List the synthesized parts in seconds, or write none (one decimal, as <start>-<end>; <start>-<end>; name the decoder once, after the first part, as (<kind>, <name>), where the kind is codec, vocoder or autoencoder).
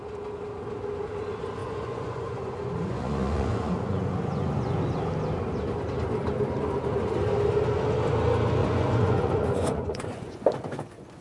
1.6-4.8 (vocoder, Vocos); 8.6-11.2